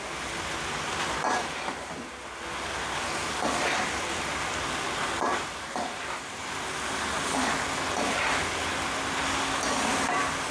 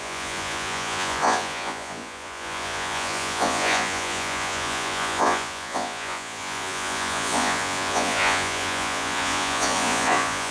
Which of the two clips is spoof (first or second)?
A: second